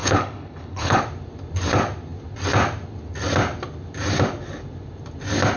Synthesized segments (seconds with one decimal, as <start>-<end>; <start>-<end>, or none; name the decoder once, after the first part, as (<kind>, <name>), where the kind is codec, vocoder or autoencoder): 0.0-1.0 (codec, HILCodec)